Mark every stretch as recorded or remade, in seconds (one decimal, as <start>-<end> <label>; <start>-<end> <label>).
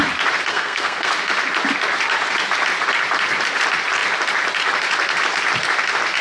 0.0-0.5 recorded; 0.5-1.1 remade; 1.1-6.2 recorded